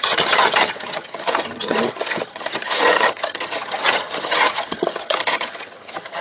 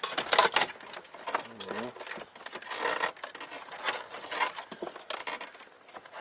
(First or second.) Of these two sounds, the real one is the second